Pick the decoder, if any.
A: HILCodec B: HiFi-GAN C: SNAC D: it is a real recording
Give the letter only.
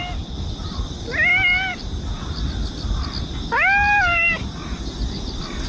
D